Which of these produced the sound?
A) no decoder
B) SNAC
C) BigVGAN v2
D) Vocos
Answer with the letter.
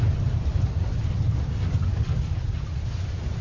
A